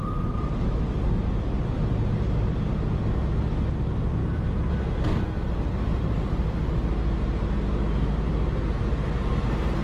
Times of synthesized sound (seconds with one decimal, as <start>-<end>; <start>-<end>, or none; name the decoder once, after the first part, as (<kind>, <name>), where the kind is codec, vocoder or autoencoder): 4.2-4.7 (vocoder, BigVGAN v2)